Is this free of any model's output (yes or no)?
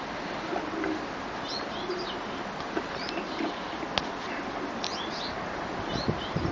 yes